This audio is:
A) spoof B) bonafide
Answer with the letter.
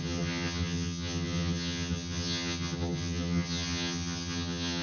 A